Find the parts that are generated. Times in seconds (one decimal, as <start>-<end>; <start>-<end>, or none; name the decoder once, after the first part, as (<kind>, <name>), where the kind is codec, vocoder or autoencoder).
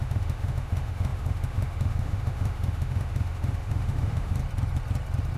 0.0-4.4 (autoencoder, DAC-VAE)